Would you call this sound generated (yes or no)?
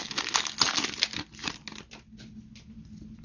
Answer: no